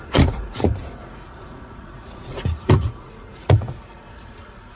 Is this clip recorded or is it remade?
remade